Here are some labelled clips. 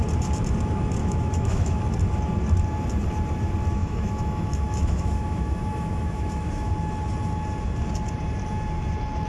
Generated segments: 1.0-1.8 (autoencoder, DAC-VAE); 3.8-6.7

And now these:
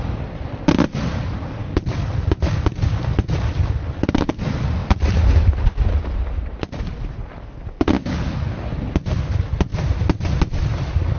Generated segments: 0.0-4.8 (vocoder, BigVGAN v2); 6.4-7.2; 8.5-11.2

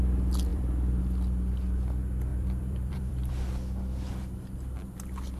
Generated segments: 0.5-1.0 (vocoder, BigVGAN v2); 2.3-3.3